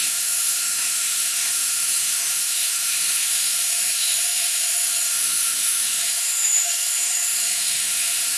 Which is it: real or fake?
fake